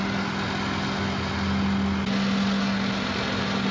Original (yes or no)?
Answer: yes